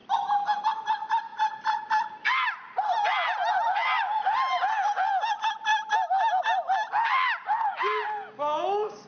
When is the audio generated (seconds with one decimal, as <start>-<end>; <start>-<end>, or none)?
none